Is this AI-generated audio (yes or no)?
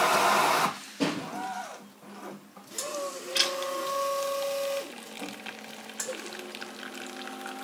no